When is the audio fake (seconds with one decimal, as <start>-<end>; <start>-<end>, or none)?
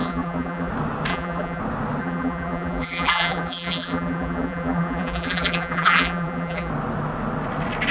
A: 0.0-0.7; 1.1-1.6; 2.0-6.7